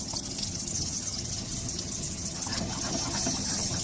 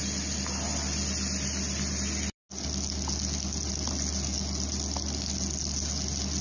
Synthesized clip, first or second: first